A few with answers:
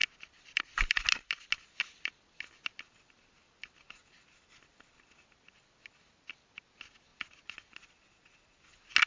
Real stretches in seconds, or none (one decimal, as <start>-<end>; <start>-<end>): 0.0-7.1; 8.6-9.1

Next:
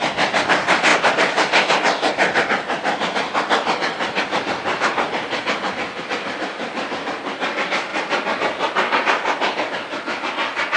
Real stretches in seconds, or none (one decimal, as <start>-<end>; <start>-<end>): 0.0-10.8

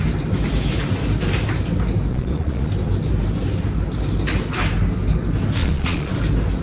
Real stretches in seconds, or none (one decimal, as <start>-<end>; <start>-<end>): 0.0-2.1; 2.7-5.6; 6.1-6.6

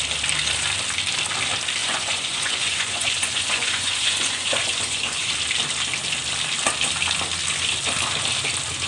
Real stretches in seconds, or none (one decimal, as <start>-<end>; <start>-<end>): 0.0-1.8; 5.3-8.9

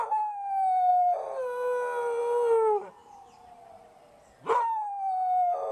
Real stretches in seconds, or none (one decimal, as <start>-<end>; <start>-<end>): 0.0-5.7

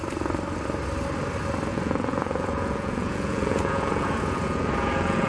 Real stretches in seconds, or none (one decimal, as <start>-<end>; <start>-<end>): 0.0-1.7

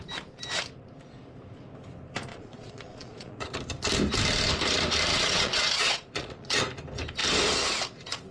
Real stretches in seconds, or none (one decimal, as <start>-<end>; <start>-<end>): 0.0-2.3; 3.5-5.1; 6.6-8.3